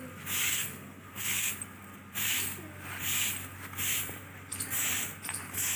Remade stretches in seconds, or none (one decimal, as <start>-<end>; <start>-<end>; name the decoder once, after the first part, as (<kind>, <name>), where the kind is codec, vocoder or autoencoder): 0.5-1.5 (codec, SNAC)